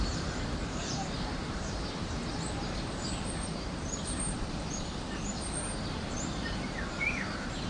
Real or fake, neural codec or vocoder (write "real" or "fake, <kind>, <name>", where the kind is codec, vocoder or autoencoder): fake, vocoder, BigVGAN v2